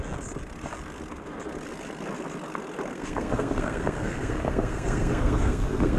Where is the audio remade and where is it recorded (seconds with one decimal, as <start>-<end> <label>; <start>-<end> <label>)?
0.0-2.9 recorded; 2.9-6.0 remade